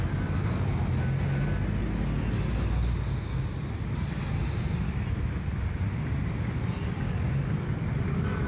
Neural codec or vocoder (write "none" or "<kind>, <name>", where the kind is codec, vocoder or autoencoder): none